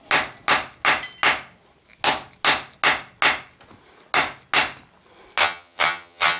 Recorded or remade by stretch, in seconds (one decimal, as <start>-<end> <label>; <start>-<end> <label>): 0.0-5.4 recorded; 5.4-6.4 remade